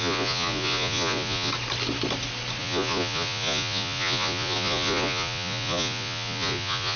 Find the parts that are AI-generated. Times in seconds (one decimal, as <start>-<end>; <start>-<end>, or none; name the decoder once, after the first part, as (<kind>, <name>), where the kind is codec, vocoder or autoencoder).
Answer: 0.0-1.5 (vocoder, Vocos); 2.6-7.0